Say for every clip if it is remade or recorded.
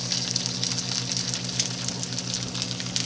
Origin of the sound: recorded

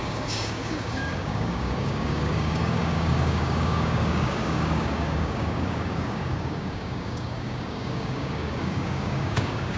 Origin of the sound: remade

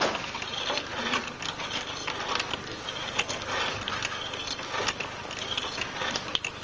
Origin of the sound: recorded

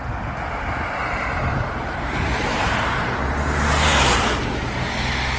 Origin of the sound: recorded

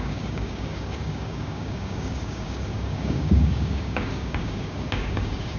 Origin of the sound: remade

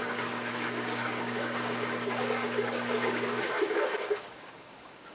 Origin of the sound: remade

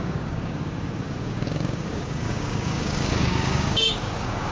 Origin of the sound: remade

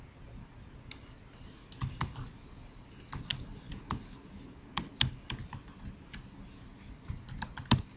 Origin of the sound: recorded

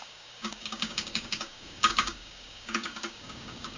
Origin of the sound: remade